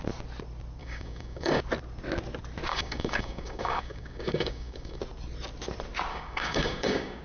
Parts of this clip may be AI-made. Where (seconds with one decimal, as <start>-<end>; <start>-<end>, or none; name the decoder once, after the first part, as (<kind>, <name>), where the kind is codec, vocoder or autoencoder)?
0.8-1.6 (codec, DAC); 2.7-5.0; 6.1-7.2